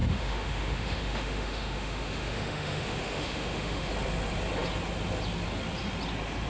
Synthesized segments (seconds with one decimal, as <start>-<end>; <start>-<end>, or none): 0.0-3.9